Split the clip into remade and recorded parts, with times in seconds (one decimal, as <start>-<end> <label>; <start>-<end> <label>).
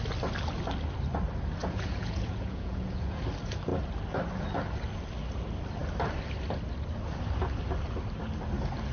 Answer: 0.0-1.6 recorded; 1.6-3.2 remade; 3.2-8.9 recorded